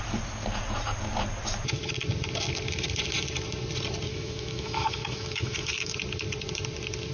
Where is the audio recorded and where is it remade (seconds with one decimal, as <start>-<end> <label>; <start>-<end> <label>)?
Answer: 0.0-4.1 recorded; 4.1-5.9 remade; 5.9-7.1 recorded